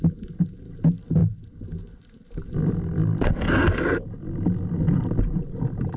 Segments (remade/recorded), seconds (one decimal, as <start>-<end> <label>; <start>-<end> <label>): 0.0-6.0 recorded